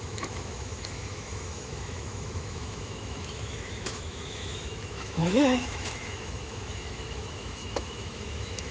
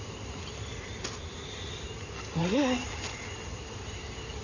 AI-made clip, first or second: first